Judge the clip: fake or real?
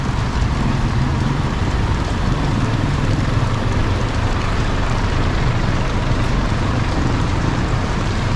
fake